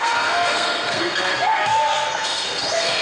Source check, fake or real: fake